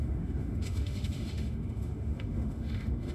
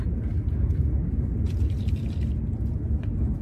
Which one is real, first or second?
second